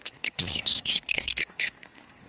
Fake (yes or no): yes